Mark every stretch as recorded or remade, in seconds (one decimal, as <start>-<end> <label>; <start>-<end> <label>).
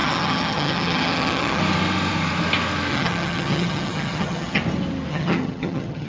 0.0-1.6 remade; 1.6-2.9 recorded; 2.9-4.6 remade; 4.6-5.1 recorded; 5.1-6.1 remade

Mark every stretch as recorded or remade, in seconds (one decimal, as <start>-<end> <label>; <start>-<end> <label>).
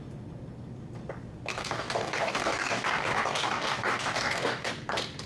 0.0-1.5 recorded; 1.5-4.7 remade; 4.7-5.3 recorded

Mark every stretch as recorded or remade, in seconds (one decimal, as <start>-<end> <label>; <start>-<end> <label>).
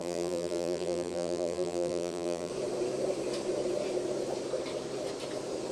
0.0-2.5 remade; 2.5-5.7 recorded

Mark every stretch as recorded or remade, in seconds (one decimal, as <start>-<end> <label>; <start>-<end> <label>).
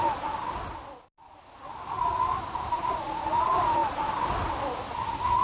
0.0-5.4 recorded